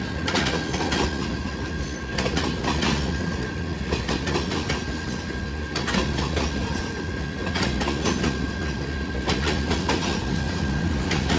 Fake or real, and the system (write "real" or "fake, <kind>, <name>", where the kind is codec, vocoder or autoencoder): fake, vocoder, Vocos